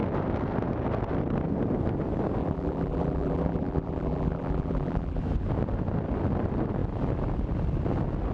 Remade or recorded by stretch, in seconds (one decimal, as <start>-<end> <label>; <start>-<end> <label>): 0.0-2.4 recorded; 2.4-5.2 remade; 5.2-8.3 recorded